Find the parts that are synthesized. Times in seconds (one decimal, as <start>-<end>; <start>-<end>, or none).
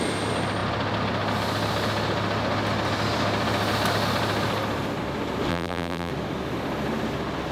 5.5-6.1